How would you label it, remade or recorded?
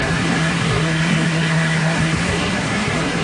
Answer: remade